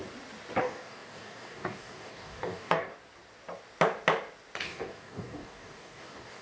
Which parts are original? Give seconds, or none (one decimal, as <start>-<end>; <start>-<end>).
0.0-0.6; 2.9-4.6